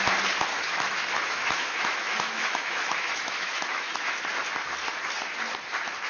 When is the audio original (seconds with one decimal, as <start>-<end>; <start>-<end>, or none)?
0.0-0.5; 4.2-6.1